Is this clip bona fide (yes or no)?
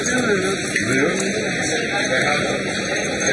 yes